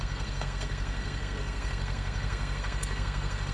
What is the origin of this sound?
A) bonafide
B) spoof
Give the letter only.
B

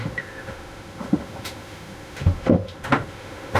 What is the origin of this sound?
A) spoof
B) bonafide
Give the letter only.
A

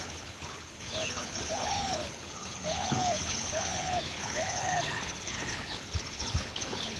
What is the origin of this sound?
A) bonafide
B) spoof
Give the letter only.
B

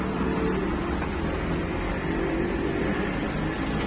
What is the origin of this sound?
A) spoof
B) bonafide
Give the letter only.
B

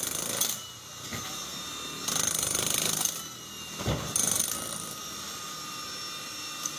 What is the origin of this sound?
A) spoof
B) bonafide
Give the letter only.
B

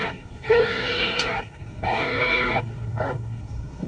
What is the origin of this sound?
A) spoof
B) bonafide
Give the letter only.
A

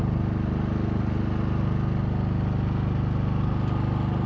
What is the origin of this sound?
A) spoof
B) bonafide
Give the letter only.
B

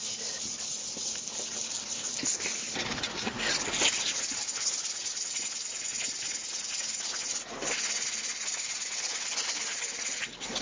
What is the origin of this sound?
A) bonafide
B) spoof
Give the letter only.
A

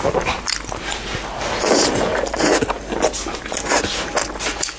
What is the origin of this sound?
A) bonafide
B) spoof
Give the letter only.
A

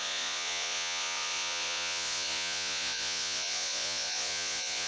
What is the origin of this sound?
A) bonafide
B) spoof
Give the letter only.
B